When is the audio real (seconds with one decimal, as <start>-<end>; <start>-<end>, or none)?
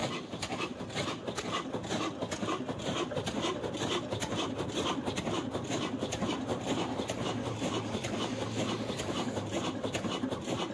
1.4-6.5